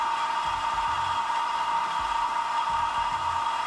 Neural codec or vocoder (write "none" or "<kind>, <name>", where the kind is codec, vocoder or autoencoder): vocoder, BigVGAN v2